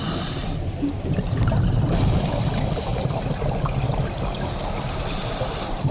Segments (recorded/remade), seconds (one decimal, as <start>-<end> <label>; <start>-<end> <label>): 0.0-0.4 remade; 0.4-1.6 recorded; 1.6-2.9 remade; 2.9-5.5 recorded; 5.5-5.9 remade